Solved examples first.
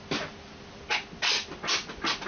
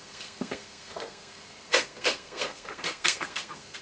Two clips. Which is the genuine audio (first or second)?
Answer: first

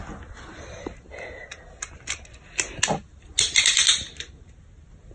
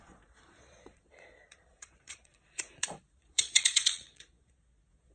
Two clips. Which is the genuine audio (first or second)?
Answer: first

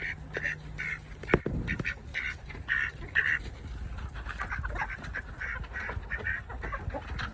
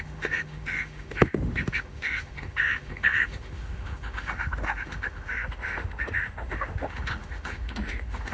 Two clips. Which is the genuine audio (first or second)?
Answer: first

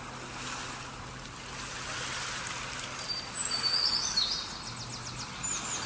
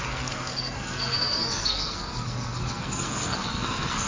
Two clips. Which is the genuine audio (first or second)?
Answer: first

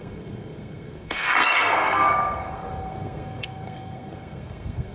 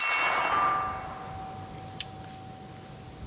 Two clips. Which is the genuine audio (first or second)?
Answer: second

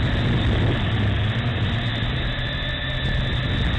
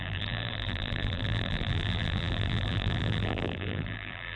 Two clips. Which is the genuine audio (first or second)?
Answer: first